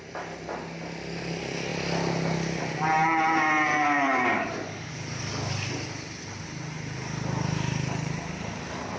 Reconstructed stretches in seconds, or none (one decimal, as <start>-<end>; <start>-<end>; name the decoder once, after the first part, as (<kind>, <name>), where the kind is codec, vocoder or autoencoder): 3.7-5.5 (codec, DAC)